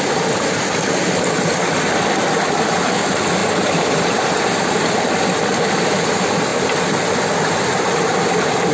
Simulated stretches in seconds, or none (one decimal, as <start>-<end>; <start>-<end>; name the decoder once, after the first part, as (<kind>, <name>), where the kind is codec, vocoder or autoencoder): none